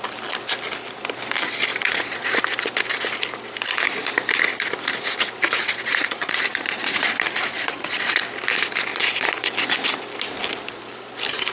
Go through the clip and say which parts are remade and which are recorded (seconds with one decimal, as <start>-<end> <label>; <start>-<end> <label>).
0.0-1.7 recorded; 1.7-2.4 remade; 2.4-5.6 recorded; 5.6-8.2 remade; 8.2-8.9 recorded; 8.9-9.5 remade; 9.5-11.5 recorded